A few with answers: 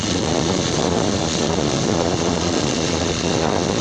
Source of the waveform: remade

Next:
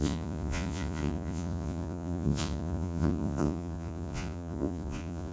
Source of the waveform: remade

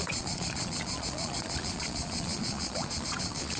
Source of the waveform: remade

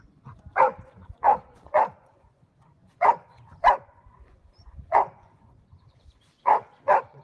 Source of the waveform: remade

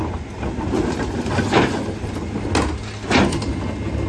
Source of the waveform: recorded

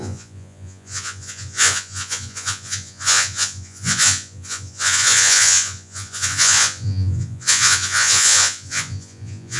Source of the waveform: remade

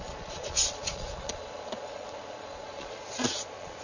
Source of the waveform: remade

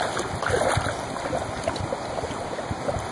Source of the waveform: recorded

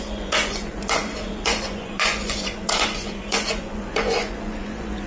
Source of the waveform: remade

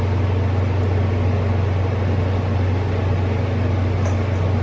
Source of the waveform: recorded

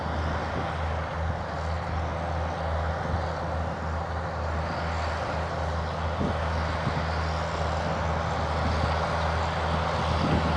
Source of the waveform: recorded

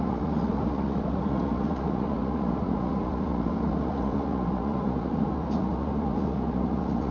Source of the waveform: remade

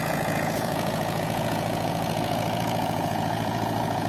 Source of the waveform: remade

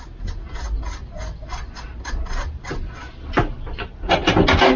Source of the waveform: recorded